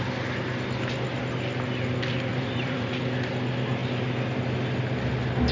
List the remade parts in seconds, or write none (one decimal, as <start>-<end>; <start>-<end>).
2.3-3.0